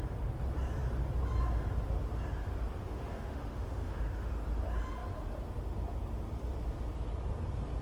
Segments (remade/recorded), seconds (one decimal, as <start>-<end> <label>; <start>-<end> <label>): 0.0-2.8 recorded; 2.8-4.3 remade; 4.3-7.8 recorded

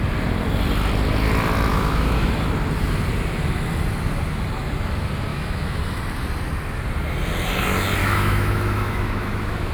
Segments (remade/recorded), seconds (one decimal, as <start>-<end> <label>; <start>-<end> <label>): 0.0-1.7 recorded; 1.7-2.3 remade; 2.3-5.3 recorded; 5.3-5.8 remade; 5.8-8.0 recorded; 8.0-9.7 remade

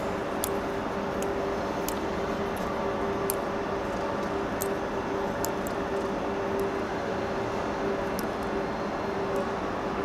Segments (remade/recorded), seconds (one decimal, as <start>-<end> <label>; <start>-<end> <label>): 0.0-10.0 recorded

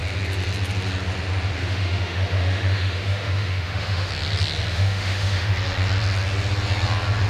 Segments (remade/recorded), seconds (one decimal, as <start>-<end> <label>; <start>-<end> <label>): 0.0-1.6 recorded; 1.6-4.1 remade; 4.1-4.7 recorded; 4.7-5.5 remade; 5.5-7.3 recorded

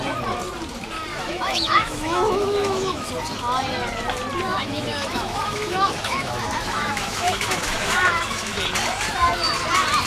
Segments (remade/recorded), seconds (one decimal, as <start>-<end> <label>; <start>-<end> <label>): 0.0-1.1 recorded; 1.1-3.1 remade; 3.1-4.5 recorded; 4.5-8.6 remade; 8.6-10.1 recorded

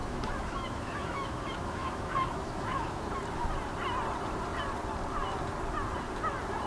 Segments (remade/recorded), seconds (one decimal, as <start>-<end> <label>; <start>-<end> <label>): 0.0-3.1 remade; 3.1-6.7 recorded

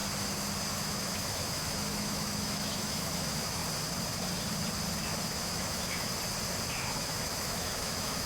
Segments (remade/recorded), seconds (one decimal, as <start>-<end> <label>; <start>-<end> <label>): 0.0-0.7 recorded; 0.7-3.6 remade; 3.6-5.4 recorded; 5.4-6.1 remade; 6.1-6.7 recorded; 6.7-8.3 remade

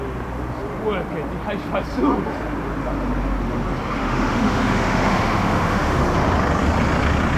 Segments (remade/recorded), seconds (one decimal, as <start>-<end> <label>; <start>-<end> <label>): 0.0-4.0 recorded; 4.0-6.0 remade; 6.0-7.4 recorded